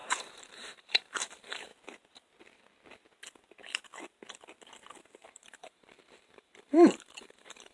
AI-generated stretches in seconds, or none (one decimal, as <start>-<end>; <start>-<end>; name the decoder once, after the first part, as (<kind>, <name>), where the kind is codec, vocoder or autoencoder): 0.0-1.7 (vocoder, BigVGAN v2); 5.3-7.7